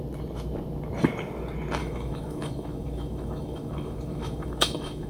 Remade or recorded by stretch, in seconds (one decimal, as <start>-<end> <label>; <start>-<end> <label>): 0.0-1.8 recorded; 1.8-5.1 remade